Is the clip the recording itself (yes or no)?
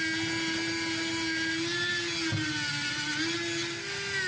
yes